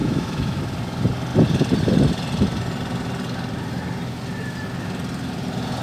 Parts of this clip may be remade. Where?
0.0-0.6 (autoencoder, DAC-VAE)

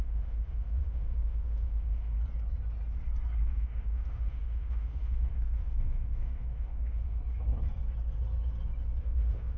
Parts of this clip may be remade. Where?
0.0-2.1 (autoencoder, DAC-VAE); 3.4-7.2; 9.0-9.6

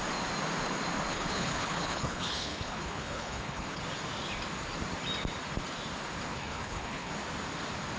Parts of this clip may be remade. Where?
1.1-3.8 (codec, HILCodec); 6.3-7.1

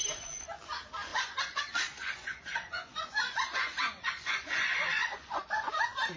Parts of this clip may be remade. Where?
1.1-1.6 (vocoder, Vocos); 2.0-5.7

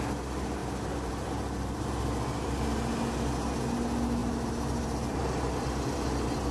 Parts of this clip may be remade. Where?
0.6-1.9 (vocoder, BigVGAN v2); 4.2-5.4